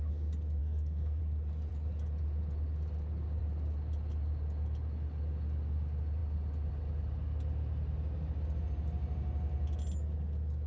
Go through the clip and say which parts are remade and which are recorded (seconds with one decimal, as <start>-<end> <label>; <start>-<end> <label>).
0.0-0.6 recorded; 0.6-1.2 remade; 1.2-10.7 recorded